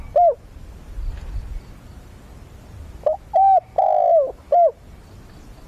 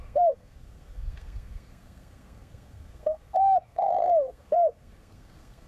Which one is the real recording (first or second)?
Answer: first